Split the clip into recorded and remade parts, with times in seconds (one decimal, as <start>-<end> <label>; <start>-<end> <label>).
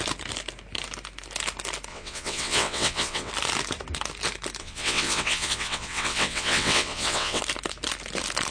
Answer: 0.0-1.9 recorded; 1.9-3.3 remade; 3.3-4.6 recorded; 4.6-7.4 remade; 7.4-8.5 recorded